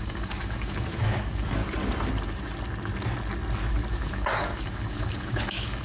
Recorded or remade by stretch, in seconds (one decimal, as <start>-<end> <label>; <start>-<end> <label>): 0.0-1.6 remade; 1.6-3.9 recorded; 3.9-5.8 remade